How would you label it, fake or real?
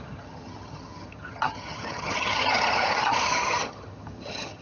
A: fake